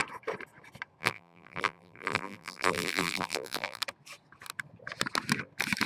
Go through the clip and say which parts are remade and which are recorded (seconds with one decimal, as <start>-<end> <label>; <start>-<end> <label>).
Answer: 0.0-1.0 recorded; 1.0-3.8 remade; 3.8-5.9 recorded